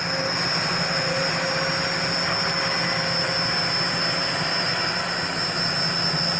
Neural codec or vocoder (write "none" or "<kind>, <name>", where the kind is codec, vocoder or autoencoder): none